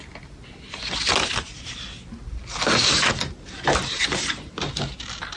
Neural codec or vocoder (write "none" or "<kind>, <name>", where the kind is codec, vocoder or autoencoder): none